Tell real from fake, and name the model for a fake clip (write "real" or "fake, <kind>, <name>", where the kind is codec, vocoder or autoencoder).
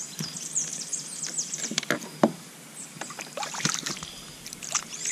fake, vocoder, BigVGAN v2